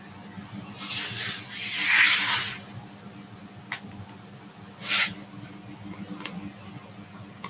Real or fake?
real